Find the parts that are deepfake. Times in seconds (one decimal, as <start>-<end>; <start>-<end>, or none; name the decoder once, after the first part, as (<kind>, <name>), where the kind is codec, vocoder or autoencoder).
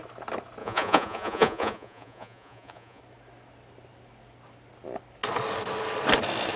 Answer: 0.6-3.0 (vocoder, Vocos)